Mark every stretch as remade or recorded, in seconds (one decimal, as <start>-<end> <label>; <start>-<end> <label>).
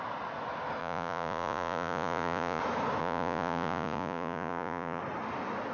0.0-0.8 recorded; 0.8-2.6 remade; 2.6-3.0 recorded; 3.0-5.0 remade; 5.0-5.7 recorded